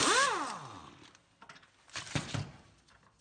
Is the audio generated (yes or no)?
no